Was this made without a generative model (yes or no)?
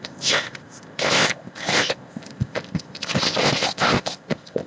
no